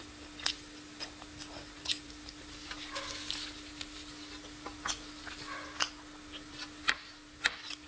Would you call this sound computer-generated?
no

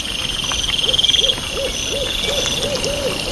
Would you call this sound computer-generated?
no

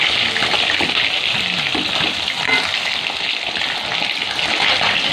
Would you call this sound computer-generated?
no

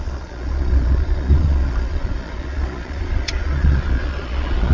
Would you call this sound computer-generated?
yes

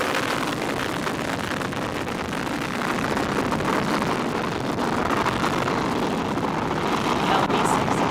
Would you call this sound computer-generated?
no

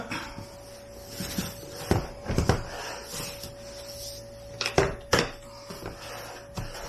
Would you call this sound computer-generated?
no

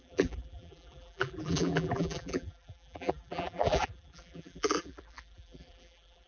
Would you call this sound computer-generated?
yes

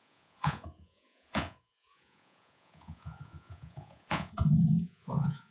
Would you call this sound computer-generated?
yes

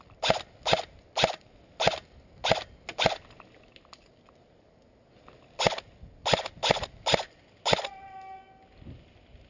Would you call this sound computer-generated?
no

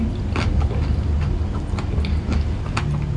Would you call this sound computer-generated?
no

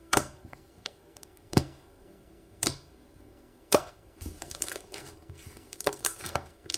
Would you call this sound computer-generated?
yes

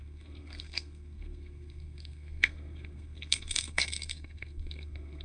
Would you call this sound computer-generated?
yes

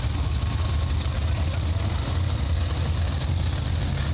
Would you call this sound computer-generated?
no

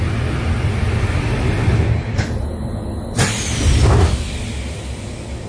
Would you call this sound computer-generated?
no